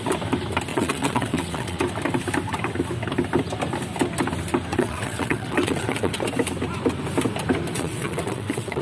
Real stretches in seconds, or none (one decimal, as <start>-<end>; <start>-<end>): 0.0-0.7; 1.8-4.7; 6.1-7.7